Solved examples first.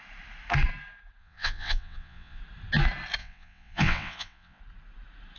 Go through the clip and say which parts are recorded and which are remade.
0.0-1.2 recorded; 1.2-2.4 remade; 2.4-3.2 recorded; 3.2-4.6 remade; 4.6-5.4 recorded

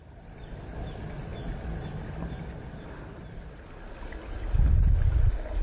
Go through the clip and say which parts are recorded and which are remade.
0.0-5.6 recorded

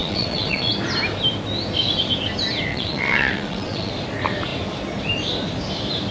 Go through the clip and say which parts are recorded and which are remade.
0.0-0.7 remade; 0.7-2.7 recorded; 2.7-3.9 remade; 3.9-6.1 recorded

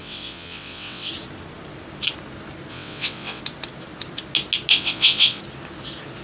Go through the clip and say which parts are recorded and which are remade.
0.0-1.1 remade; 1.1-2.7 recorded; 2.7-3.4 remade; 3.4-4.7 recorded; 4.7-5.4 remade; 5.4-6.2 recorded

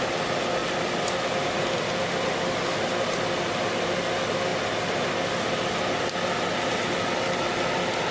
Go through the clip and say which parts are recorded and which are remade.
0.0-8.1 recorded